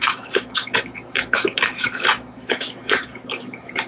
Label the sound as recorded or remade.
remade